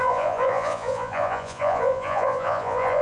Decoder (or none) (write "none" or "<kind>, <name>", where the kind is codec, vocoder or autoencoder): vocoder, Vocos